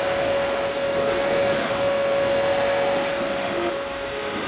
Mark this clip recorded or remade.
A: remade